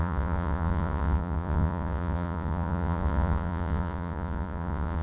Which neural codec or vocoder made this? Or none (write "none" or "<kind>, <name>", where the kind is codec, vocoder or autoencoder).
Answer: vocoder, Vocos